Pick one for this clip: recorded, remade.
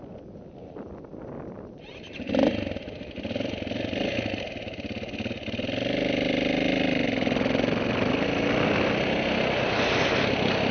recorded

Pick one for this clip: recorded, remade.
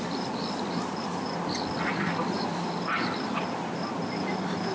remade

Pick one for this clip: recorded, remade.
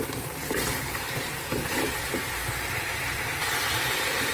remade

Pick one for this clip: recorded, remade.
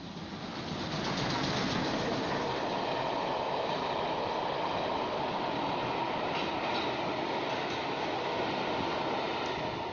recorded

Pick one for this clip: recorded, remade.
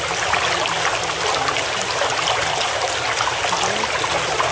recorded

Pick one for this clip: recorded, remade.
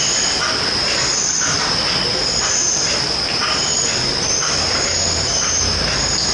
remade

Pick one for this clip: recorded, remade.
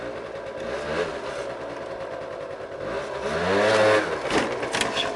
recorded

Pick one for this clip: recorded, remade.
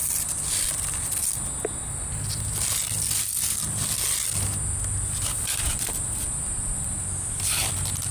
recorded